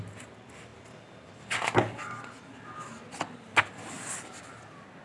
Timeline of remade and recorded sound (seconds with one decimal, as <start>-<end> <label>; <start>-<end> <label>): 0.0-5.0 recorded